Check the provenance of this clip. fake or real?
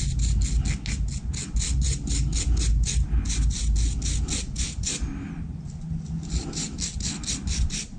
real